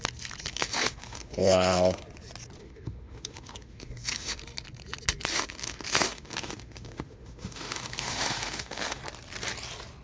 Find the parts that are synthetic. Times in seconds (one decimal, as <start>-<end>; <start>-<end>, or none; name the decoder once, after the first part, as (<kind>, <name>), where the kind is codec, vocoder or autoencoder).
0.5-2.0 (autoencoder, DAC-VAE); 2.6-4.4; 5.3-9.0